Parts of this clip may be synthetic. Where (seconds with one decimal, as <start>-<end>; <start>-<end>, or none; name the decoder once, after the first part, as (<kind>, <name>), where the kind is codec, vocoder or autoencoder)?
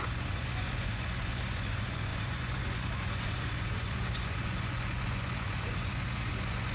0.0-6.7 (vocoder, Vocos)